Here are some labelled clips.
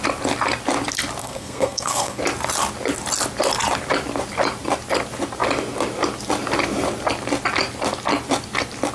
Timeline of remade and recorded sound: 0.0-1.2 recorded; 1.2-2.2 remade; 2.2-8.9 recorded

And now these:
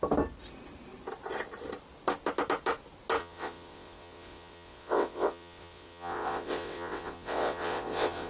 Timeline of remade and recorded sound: 0.0-3.2 recorded; 3.2-8.3 remade

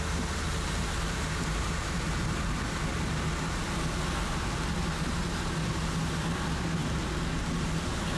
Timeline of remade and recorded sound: 0.0-8.2 recorded

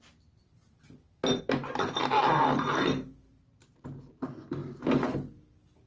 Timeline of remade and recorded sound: 0.0-5.9 recorded

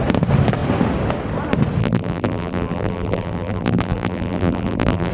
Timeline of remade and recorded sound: 0.0-1.8 recorded; 1.8-5.1 remade